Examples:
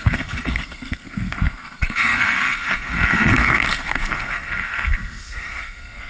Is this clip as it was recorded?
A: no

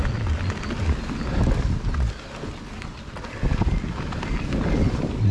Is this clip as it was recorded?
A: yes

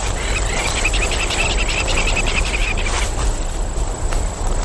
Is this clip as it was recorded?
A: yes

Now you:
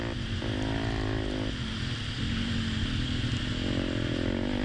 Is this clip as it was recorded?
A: yes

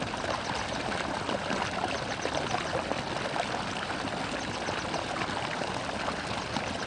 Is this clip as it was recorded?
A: yes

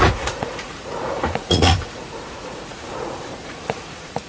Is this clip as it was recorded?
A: no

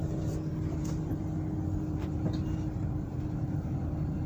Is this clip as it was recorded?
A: yes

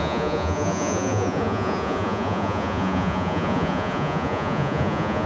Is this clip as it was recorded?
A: no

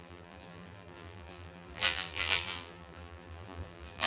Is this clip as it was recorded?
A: no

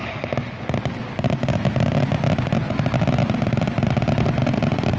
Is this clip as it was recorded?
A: yes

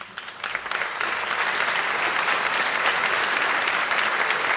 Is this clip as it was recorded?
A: yes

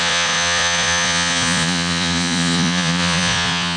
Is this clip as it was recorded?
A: no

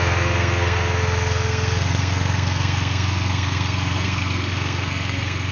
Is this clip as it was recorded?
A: no